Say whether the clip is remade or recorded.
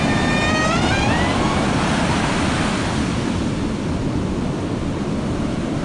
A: recorded